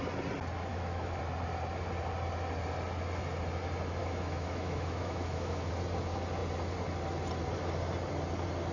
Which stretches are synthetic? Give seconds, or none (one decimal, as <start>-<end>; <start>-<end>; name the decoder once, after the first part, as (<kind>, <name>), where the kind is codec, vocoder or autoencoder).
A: 0.7-1.2 (autoencoder, DAC-VAE); 4.0-5.7